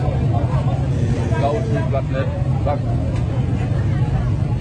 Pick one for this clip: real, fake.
real